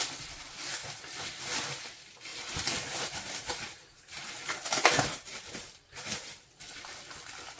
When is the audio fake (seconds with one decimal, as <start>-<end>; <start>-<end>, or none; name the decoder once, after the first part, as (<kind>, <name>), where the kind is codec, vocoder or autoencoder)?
2.3-4.5 (vocoder, BigVGAN v2); 5.1-6.6